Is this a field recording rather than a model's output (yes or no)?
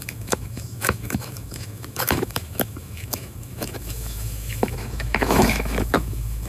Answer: no